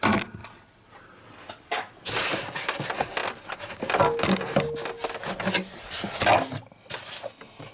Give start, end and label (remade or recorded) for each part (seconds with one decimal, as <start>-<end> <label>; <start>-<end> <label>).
0.0-7.7 recorded